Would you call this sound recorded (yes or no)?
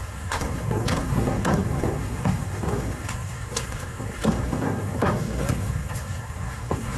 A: no